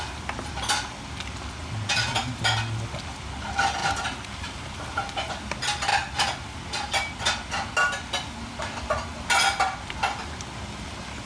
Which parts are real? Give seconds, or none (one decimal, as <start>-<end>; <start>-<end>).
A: 0.0-3.8; 5.4-11.3